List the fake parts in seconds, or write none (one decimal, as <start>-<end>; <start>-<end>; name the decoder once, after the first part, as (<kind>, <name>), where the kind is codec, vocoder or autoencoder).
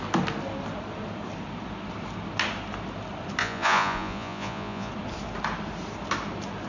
3.4-4.9 (vocoder, Vocos)